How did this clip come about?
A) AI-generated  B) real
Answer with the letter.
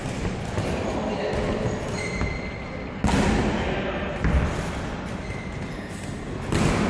B